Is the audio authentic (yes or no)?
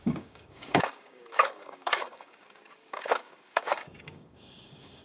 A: no